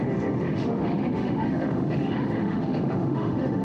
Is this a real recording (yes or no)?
no